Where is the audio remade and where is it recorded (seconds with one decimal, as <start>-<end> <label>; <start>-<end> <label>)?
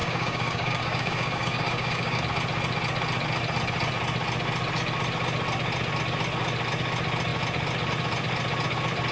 0.0-2.2 remade; 2.2-9.1 recorded